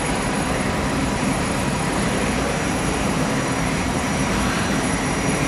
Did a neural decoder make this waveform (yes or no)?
yes